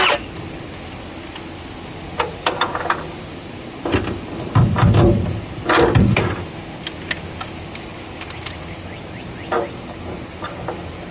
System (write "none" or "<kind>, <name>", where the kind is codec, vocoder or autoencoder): none